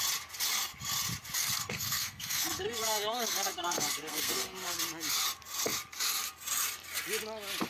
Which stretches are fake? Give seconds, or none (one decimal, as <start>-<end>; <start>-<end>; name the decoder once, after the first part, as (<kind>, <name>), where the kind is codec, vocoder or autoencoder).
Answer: 1.4-4.8 (codec, SNAC)